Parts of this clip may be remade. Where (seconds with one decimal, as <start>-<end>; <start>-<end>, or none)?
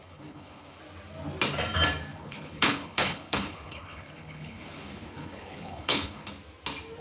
0.0-0.8; 2.1-6.3